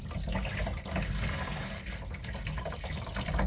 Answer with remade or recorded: recorded